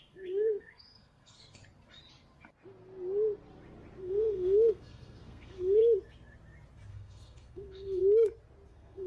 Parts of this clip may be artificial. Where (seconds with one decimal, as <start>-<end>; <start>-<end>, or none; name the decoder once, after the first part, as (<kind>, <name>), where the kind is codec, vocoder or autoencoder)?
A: 0.0-1.6 (codec, SNAC); 4.0-5.8; 6.9-8.0; 8.7-9.1